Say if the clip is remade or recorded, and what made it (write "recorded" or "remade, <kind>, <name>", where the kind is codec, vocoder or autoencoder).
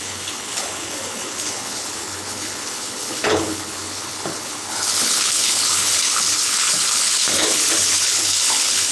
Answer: remade, codec, HILCodec